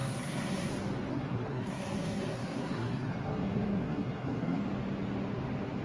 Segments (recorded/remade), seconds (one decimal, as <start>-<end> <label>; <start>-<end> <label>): 0.0-0.7 remade; 0.7-1.1 recorded; 1.1-4.6 remade; 4.6-5.8 recorded